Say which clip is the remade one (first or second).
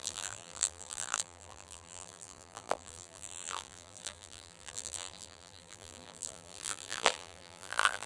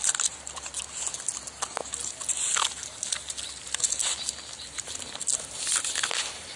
first